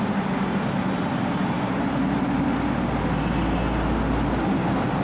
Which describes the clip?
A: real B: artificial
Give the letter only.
A